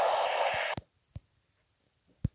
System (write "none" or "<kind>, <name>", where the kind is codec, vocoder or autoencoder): none